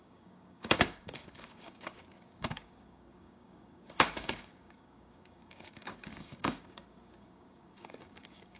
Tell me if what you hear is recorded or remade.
remade